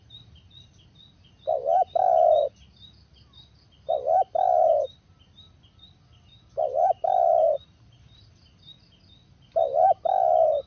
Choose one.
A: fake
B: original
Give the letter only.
A